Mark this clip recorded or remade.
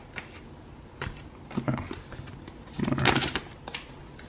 recorded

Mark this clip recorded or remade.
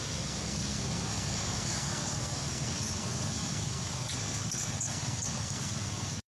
remade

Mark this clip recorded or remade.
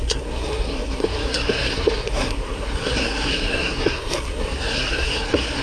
remade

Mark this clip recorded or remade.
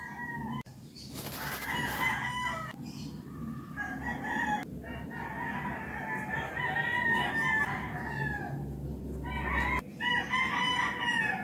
recorded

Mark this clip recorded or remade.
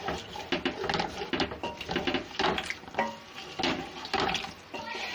recorded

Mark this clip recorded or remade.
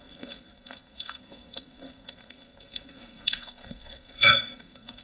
remade